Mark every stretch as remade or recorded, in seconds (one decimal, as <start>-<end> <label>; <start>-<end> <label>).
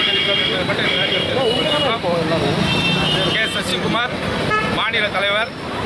0.0-0.7 recorded; 0.7-2.6 remade; 2.6-5.9 recorded